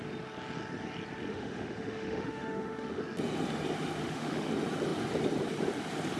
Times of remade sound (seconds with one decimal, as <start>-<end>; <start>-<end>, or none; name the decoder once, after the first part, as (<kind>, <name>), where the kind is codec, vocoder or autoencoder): 1.3-3.0 (autoencoder, DAC-VAE); 4.0-4.5